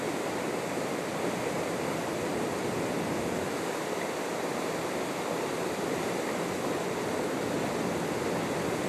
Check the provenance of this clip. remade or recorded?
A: recorded